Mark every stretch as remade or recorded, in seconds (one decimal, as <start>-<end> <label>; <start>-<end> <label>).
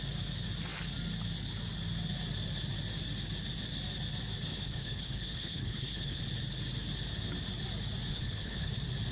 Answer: 0.0-4.5 recorded; 4.5-6.2 remade; 6.2-8.1 recorded; 8.1-8.7 remade; 8.7-9.1 recorded